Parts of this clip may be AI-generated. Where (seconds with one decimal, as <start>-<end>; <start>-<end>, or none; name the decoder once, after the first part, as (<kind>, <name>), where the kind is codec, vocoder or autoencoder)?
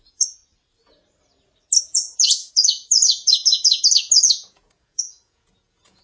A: 0.0-0.4 (vocoder, Vocos); 1.8-6.0